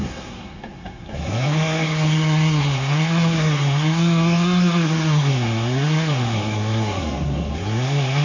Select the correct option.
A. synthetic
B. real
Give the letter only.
A